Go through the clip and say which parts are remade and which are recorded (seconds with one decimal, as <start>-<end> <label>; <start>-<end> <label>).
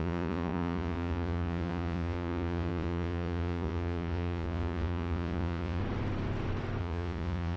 0.0-5.8 remade; 5.8-6.8 recorded; 6.8-7.6 remade